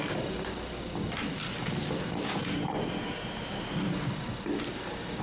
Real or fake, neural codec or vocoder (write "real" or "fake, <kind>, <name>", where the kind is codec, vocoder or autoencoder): real